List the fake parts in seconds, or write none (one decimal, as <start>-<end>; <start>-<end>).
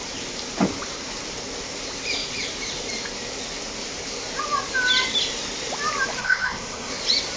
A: 6.2-6.9